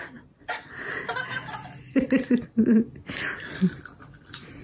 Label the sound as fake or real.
real